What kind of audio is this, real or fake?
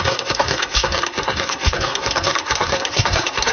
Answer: fake